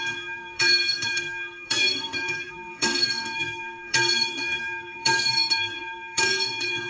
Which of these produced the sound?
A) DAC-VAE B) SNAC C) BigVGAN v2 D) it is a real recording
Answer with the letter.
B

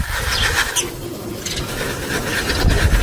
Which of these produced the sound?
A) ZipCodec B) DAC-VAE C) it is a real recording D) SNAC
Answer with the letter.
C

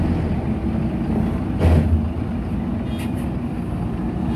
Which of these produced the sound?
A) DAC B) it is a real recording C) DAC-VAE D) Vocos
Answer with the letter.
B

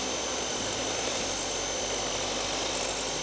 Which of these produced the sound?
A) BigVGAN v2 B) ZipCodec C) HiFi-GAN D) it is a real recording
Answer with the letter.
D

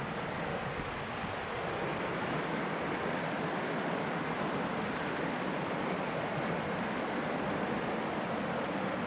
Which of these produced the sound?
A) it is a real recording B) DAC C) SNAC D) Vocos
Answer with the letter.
A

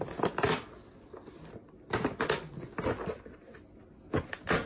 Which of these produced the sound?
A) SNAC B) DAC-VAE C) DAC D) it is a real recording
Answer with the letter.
D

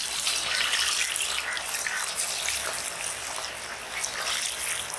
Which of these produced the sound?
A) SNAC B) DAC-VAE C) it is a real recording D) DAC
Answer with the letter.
C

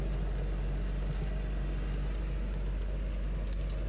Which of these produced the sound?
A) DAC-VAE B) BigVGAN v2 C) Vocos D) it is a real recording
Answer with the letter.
D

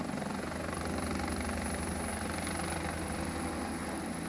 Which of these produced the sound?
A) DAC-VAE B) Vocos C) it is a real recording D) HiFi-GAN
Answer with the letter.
C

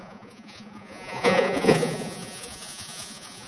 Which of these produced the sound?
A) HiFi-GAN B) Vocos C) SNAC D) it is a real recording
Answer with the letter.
B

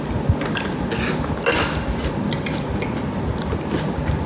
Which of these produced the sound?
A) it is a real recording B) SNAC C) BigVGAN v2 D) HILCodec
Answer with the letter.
A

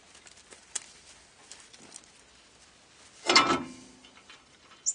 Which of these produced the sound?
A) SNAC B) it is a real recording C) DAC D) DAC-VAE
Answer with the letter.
B